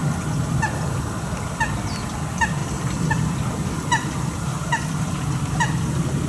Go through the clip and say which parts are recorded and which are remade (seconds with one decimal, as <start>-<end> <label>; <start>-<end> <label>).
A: 0.0-2.6 recorded; 2.6-3.3 remade; 3.3-4.5 recorded; 4.5-5.2 remade; 5.2-6.3 recorded